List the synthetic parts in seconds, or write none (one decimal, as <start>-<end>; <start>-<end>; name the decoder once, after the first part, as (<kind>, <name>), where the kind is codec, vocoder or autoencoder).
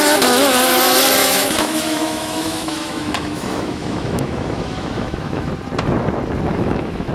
1.2-5.5 (autoencoder, DAC-VAE); 6.5-7.1